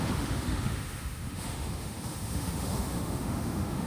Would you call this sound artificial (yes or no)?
yes